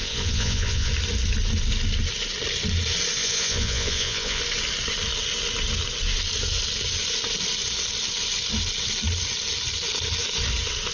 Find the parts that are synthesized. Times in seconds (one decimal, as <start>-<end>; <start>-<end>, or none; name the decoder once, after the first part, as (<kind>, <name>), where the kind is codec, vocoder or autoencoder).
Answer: 0.0-0.9 (vocoder, Vocos); 3.2-4.4